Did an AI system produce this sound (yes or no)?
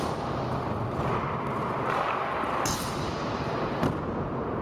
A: no